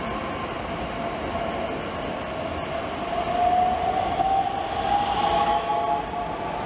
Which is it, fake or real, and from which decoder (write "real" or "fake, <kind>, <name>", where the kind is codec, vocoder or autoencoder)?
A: real